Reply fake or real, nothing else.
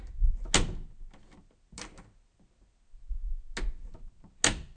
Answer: real